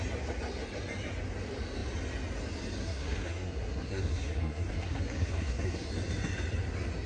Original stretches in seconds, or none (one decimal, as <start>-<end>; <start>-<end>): 0.0-2.8; 5.9-7.1